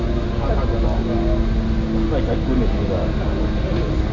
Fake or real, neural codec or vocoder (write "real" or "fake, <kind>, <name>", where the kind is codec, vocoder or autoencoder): real